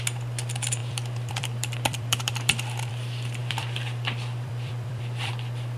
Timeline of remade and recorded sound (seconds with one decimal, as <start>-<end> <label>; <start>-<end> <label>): 0.0-0.8 recorded; 0.8-2.9 remade; 2.9-3.4 recorded; 3.4-5.3 remade; 5.3-5.8 recorded